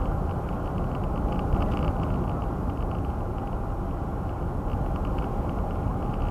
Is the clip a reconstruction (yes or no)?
no